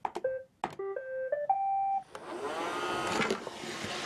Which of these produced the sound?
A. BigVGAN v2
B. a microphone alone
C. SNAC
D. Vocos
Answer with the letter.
B